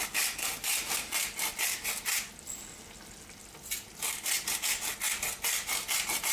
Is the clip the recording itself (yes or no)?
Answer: yes